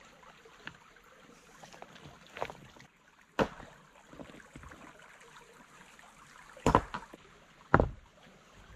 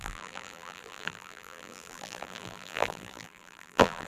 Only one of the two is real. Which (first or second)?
first